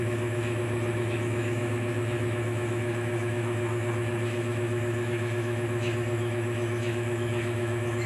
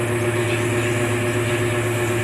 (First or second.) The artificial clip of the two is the first